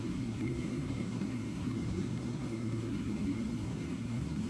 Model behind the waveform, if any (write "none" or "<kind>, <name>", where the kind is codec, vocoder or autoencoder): codec, SNAC